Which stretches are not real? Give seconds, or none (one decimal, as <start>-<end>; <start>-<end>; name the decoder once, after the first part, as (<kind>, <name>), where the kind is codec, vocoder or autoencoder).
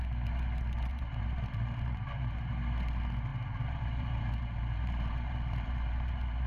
0.9-2.5 (vocoder, BigVGAN v2); 3.3-6.5